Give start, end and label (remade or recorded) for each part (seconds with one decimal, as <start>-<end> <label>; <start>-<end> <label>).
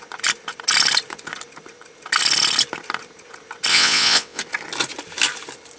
0.0-3.7 recorded; 3.7-4.4 remade; 4.4-5.8 recorded